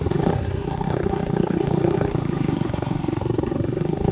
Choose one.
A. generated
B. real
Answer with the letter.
A